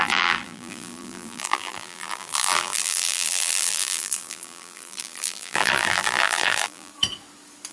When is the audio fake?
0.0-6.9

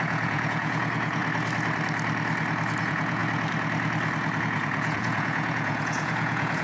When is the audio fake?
0.0-1.2; 2.8-3.2; 4.4-6.6

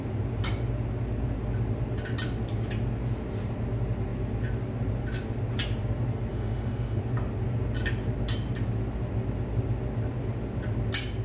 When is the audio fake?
6.3-7.0

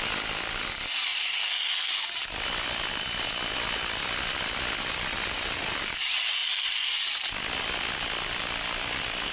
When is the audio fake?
none

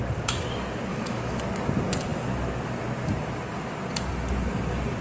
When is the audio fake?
0.9-1.4